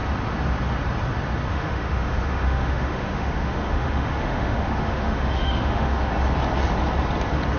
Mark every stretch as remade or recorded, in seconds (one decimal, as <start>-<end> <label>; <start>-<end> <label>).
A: 0.0-1.5 recorded; 1.5-6.1 remade; 6.1-7.6 recorded